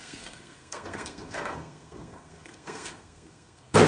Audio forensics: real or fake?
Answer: fake